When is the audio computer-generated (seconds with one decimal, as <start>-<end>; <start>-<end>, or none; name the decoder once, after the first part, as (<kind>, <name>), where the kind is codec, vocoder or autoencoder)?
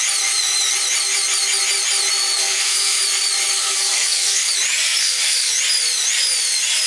2.4-3.0 (codec, SNAC); 3.5-4.5; 5.0-5.5